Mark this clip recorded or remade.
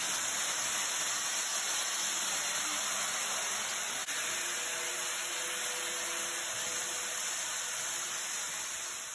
recorded